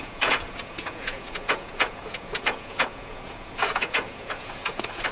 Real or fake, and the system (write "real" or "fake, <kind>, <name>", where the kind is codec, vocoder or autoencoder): fake, vocoder, Vocos